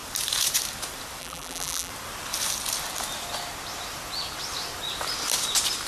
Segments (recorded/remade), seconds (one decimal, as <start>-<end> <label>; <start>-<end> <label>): 0.0-1.2 recorded; 1.2-1.9 remade; 1.9-5.9 recorded